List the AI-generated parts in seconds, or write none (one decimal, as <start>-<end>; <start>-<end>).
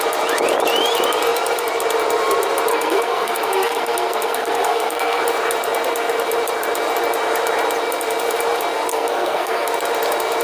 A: 2.7-5.2; 8.9-9.7